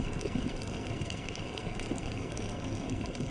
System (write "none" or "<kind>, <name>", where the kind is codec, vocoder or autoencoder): codec, SNAC